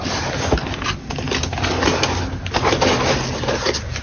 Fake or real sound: real